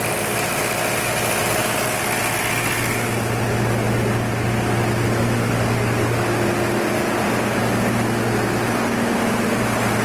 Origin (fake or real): real